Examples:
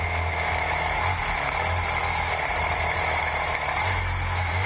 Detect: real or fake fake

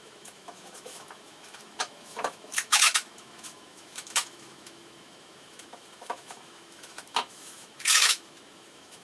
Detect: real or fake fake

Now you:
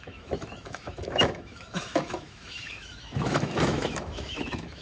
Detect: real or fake fake